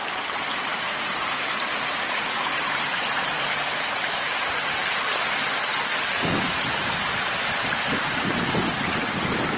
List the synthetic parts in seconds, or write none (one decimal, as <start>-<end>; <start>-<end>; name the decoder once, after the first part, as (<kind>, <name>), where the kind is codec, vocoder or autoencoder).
0.7-4.2 (vocoder, BigVGAN v2)